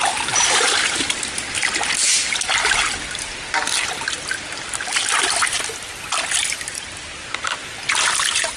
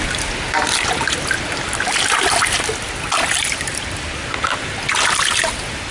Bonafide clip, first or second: second